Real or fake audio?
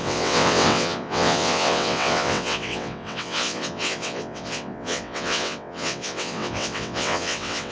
fake